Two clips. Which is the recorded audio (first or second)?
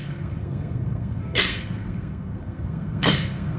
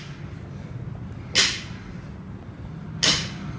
second